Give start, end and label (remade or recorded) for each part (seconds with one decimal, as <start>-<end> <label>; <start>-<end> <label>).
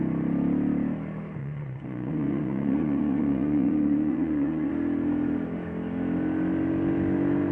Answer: 0.0-1.4 recorded; 1.4-4.7 remade; 4.7-7.5 recorded